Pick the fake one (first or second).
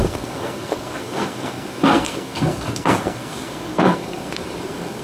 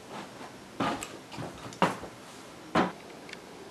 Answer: first